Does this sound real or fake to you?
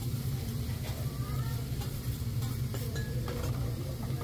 fake